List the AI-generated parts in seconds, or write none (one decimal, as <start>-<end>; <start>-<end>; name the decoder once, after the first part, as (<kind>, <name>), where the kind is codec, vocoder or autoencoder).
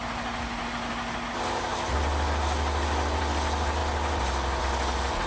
none